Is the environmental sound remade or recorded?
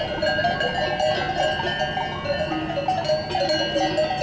recorded